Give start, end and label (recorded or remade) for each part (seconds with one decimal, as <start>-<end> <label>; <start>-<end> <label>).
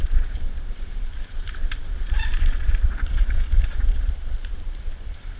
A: 0.0-5.4 remade